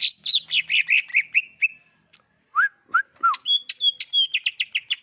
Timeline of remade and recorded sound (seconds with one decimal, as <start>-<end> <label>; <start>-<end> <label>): 0.0-5.0 recorded